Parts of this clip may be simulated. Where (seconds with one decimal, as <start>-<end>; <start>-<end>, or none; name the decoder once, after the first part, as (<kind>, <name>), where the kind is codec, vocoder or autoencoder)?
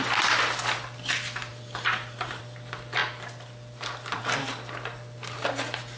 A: 1.5-2.4 (vocoder, BigVGAN v2)